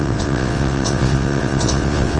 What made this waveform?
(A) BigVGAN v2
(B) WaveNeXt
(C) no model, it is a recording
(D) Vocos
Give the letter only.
B